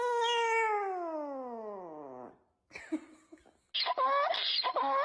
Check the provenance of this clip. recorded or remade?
recorded